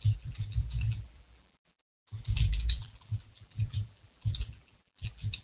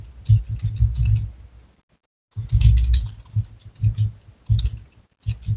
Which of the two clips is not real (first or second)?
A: first